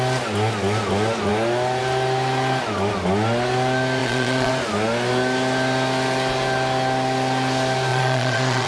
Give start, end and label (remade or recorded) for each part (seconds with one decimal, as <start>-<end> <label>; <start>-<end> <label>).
0.0-4.0 recorded; 4.0-4.5 remade; 4.5-7.9 recorded; 7.9-8.7 remade